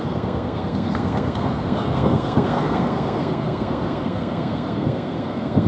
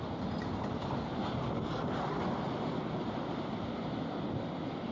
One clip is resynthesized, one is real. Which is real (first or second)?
second